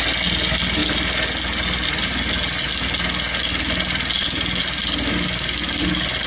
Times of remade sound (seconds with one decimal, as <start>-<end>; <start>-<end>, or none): none